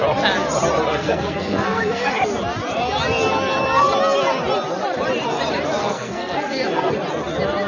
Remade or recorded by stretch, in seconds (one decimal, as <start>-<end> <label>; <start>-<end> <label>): 0.0-0.9 recorded; 0.9-2.1 remade; 2.1-5.8 recorded; 5.8-6.9 remade; 6.9-7.7 recorded